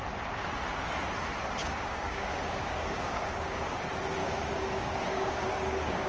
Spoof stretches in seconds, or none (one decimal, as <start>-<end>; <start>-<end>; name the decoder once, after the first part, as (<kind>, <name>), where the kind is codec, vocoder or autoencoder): 1.6-3.8 (codec, DAC); 4.2-6.1